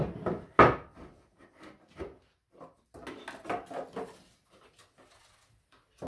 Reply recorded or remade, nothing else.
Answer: recorded